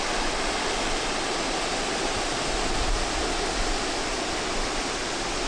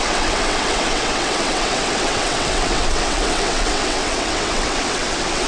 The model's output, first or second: second